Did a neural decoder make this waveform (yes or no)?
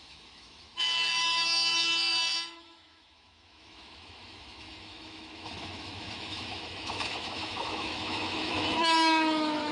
yes